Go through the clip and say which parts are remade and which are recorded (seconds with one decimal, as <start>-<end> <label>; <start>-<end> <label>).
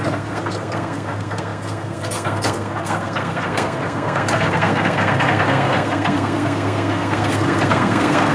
0.0-8.3 remade